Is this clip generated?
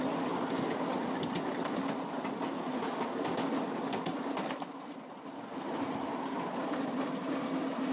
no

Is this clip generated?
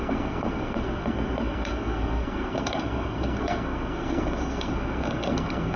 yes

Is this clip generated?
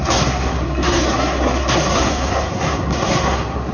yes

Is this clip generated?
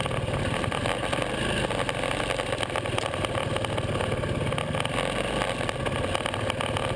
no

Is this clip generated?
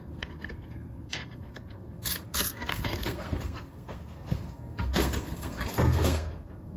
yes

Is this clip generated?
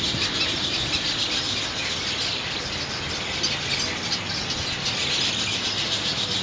no